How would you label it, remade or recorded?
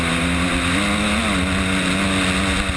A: recorded